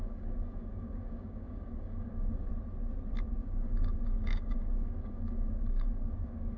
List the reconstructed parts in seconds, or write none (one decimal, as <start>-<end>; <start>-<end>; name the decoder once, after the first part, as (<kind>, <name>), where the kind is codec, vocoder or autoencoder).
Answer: 0.0-2.5 (codec, DAC); 3.3-6.6